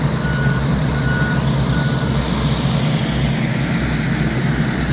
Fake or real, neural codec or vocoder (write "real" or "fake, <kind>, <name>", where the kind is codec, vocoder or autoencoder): real